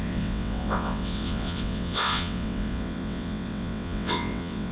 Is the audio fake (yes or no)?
yes